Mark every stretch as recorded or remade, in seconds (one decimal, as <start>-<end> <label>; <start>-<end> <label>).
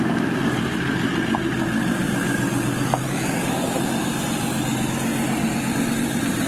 0.0-1.1 recorded; 1.1-4.6 remade; 4.6-5.1 recorded; 5.1-6.5 remade